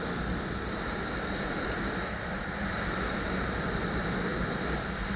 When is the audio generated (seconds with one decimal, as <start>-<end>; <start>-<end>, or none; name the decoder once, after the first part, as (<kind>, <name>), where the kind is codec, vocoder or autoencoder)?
none